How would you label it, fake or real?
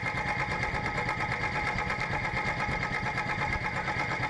real